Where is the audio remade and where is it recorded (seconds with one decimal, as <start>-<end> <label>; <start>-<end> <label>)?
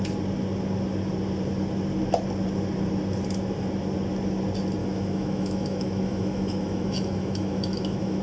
0.0-4.8 recorded; 4.8-8.2 remade